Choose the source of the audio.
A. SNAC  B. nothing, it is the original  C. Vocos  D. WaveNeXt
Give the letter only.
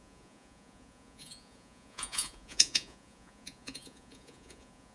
C